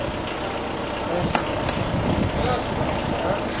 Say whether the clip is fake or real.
real